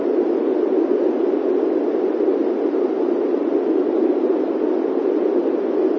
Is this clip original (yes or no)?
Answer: yes